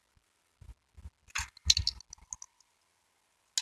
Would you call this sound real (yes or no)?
yes